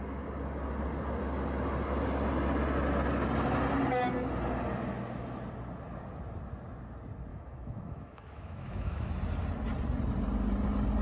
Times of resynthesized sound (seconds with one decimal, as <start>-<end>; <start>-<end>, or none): 7.3-9.1